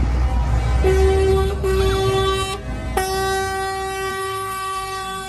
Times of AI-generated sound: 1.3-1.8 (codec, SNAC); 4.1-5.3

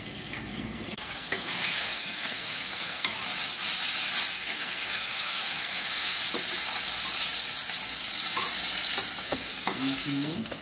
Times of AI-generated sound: 0.0-3.2 (codec, SNAC); 4.3-6.2; 9.2-10.6

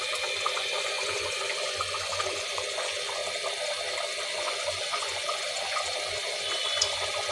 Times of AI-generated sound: 0.0-3.2 (vocoder, Vocos); 4.3-7.3